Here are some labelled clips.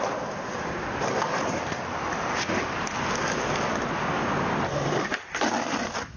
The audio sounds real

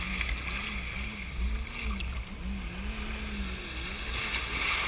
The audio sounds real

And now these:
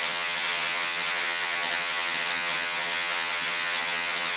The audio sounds fake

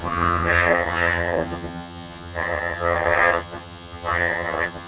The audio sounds fake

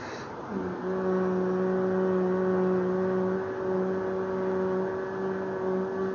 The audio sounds real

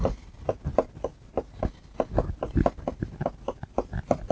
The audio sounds real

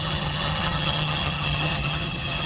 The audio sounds fake